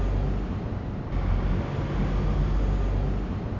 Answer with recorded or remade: recorded